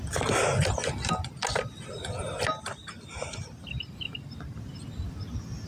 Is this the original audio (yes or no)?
yes